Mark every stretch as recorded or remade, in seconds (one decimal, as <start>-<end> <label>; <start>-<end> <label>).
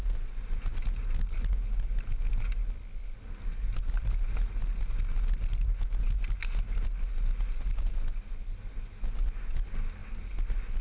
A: 0.0-10.8 recorded